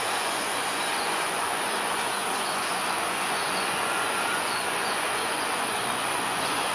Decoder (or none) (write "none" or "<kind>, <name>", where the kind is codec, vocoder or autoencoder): vocoder, Vocos